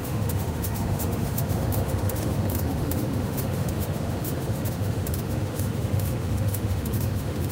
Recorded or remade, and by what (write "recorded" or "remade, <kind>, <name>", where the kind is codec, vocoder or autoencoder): remade, autoencoder, DAC-VAE